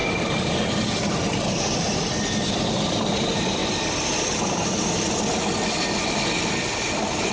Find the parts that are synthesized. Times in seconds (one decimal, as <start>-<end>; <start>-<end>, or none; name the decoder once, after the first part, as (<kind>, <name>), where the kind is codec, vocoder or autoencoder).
none